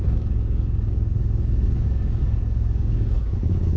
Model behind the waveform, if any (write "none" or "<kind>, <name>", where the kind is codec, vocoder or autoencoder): codec, DAC